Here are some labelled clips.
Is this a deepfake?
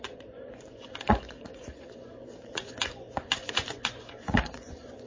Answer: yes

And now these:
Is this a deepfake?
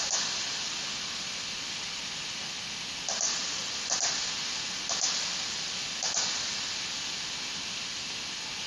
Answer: no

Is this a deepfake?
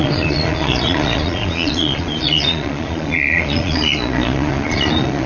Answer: yes